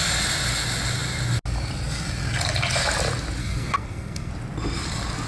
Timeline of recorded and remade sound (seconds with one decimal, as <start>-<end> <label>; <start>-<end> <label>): 0.0-3.4 recorded; 3.4-4.3 remade; 4.3-5.3 recorded